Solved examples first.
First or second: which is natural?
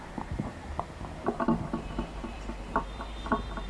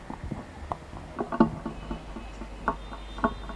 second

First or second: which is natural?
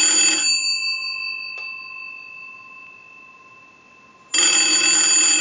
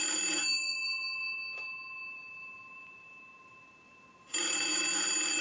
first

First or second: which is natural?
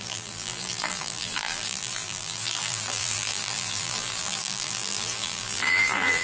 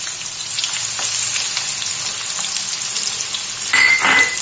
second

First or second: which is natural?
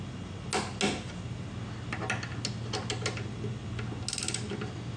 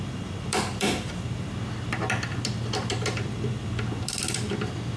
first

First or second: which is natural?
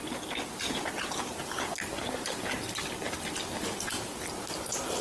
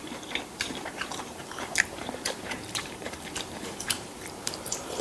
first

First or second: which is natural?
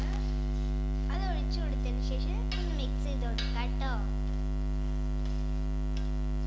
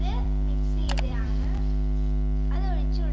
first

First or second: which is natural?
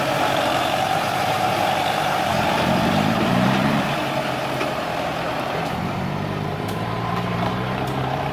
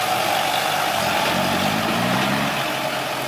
second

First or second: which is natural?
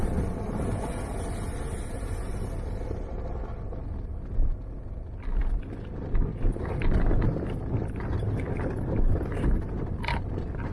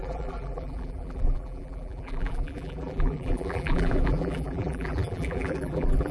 first